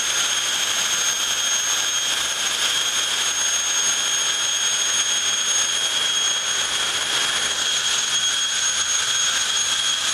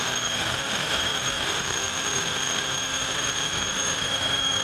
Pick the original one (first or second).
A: first